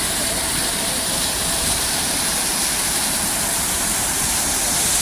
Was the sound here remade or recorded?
remade